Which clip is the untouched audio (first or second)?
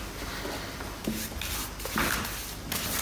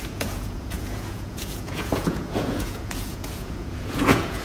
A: first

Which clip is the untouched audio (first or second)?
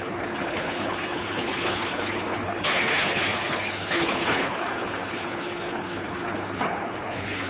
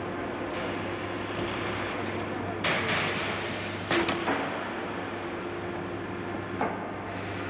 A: second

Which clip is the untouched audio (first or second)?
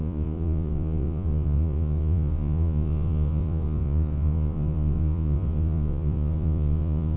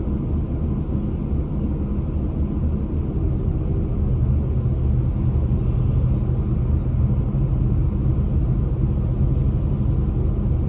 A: second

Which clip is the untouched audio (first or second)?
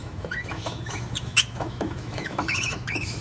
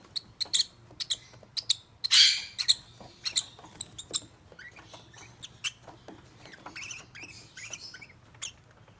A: second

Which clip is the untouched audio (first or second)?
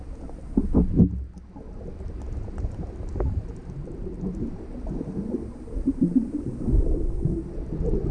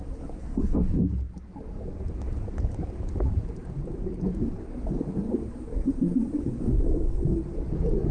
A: first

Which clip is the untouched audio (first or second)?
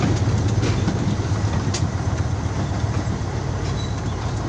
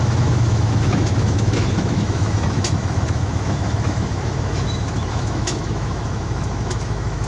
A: first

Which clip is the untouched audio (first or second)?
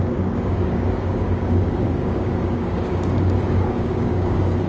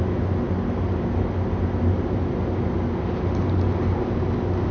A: second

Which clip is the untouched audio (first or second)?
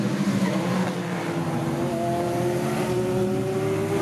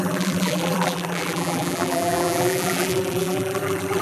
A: first